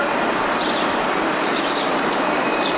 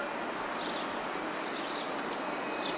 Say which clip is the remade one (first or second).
first